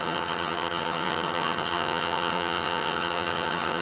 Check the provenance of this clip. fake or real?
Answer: fake